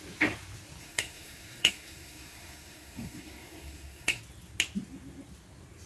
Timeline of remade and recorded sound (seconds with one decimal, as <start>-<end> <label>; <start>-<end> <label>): 0.0-0.8 recorded; 0.8-4.2 remade; 4.2-5.9 recorded